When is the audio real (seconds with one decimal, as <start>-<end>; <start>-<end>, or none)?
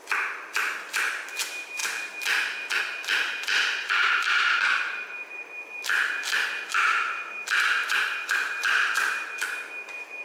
0.0-10.2